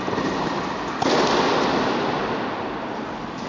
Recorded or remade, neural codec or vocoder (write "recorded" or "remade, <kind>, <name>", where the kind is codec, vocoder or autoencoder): recorded